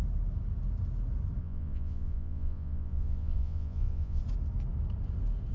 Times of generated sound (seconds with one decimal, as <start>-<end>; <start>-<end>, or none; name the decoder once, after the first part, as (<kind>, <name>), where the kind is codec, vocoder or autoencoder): 1.4-4.2 (vocoder, Vocos)